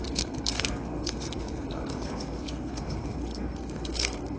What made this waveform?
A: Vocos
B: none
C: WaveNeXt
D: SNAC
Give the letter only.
D